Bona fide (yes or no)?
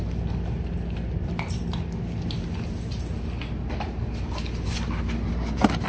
yes